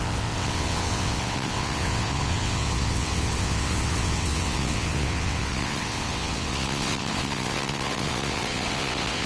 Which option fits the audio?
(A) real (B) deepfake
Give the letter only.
B